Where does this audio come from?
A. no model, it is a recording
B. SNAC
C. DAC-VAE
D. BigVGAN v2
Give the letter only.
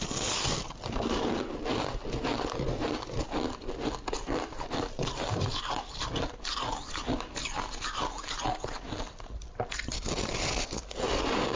A